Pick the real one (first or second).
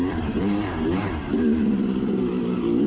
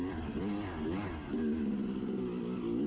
second